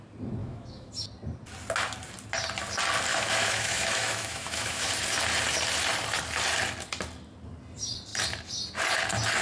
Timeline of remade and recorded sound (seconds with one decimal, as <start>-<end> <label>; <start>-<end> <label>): 0.0-0.4 recorded; 0.4-0.9 remade; 0.9-3.1 recorded; 3.1-4.9 remade; 4.9-9.4 recorded